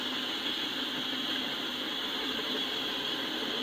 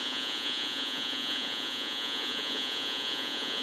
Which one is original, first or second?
first